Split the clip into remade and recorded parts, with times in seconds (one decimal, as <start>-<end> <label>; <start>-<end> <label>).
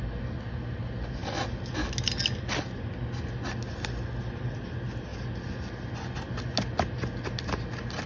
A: 0.0-8.1 recorded